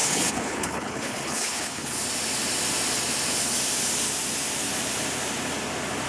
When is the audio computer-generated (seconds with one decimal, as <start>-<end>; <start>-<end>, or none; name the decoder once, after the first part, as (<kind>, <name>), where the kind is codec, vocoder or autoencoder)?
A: 0.0-1.9 (codec, HILCodec)

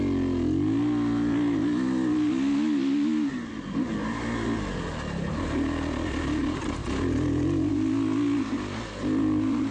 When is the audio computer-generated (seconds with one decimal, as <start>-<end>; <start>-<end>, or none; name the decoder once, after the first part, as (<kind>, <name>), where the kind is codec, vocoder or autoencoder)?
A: none

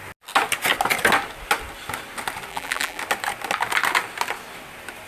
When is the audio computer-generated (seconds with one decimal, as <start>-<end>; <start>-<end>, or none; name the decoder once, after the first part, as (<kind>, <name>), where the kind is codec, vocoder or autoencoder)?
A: 2.5-3.0 (vocoder, BigVGAN v2)

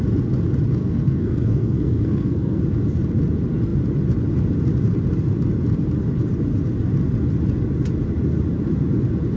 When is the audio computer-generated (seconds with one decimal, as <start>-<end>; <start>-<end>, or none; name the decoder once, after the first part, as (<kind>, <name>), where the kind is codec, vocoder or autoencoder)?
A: 0.8-2.6 (codec, SNAC)

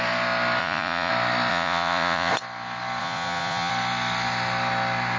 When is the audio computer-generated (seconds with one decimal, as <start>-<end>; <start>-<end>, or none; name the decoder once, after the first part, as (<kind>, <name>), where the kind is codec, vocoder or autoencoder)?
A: 0.6-1.1 (vocoder, Vocos); 1.5-2.3; 3.0-3.7

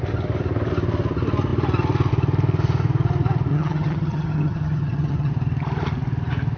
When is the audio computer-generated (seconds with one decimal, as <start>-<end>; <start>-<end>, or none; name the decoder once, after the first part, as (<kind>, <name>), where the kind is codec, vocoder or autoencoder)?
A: 3.5-5.3 (vocoder, HiFi-GAN)

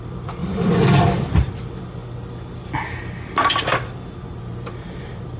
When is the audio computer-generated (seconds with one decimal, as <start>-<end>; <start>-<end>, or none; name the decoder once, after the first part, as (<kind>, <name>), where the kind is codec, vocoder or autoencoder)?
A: 0.0-0.4 (vocoder, BigVGAN v2); 1.3-2.0; 4.4-5.4